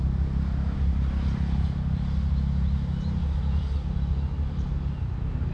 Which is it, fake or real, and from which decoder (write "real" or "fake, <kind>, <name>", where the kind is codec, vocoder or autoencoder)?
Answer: real